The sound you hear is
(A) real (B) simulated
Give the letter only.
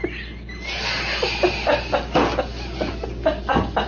A